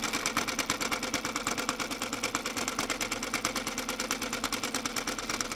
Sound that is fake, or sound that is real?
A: real